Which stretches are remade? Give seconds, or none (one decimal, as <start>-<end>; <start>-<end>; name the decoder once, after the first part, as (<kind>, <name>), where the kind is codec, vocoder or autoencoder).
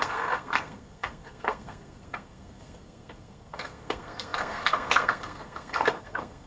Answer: 0.0-6.5 (codec, SNAC)